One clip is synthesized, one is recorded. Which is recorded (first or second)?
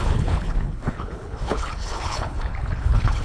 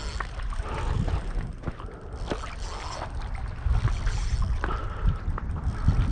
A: second